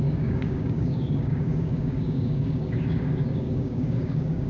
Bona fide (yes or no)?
no